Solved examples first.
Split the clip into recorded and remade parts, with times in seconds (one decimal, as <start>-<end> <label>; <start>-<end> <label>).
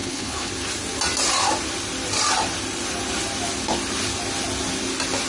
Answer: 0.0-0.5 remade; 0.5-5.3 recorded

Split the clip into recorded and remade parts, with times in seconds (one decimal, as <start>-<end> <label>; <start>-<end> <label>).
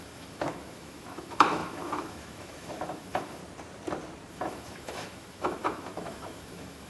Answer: 0.0-3.4 remade; 3.4-4.3 recorded; 4.3-6.9 remade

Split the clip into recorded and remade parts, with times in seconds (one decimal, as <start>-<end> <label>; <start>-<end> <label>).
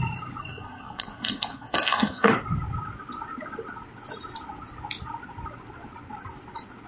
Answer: 0.0-0.4 recorded; 0.4-2.3 remade; 2.3-6.9 recorded